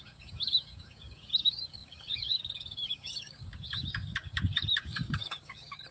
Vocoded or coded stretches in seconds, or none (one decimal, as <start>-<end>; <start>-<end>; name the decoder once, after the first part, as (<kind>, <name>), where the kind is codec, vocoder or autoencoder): 0.0-5.9 (codec, DAC)